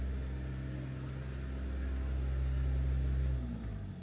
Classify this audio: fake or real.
real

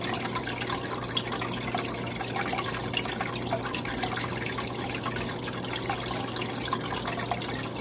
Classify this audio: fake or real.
real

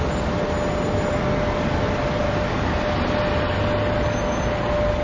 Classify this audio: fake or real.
real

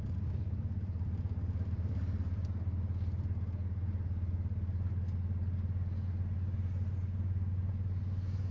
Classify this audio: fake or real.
real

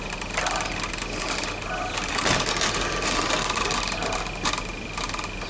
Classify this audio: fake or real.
real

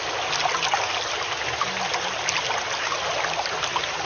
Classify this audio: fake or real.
real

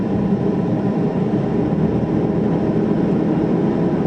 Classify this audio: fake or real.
real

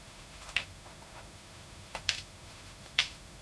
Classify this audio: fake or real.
fake